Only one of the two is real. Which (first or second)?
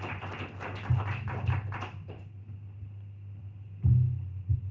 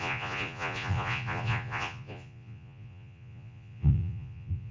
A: first